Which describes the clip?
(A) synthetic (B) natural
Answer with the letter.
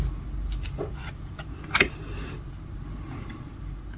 B